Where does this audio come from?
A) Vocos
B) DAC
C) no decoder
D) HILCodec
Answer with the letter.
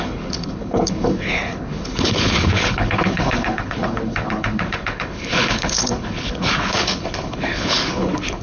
D